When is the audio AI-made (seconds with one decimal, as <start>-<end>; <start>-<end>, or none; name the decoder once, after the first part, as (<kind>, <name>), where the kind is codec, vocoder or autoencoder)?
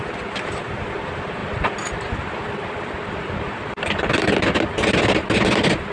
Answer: 1.4-4.3 (vocoder, BigVGAN v2)